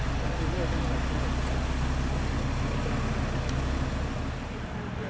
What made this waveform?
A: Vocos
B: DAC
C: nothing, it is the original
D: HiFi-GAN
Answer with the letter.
C